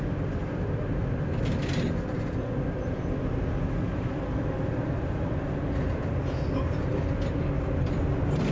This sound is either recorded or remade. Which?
recorded